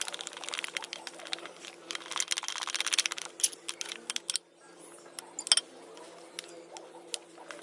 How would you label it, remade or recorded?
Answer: recorded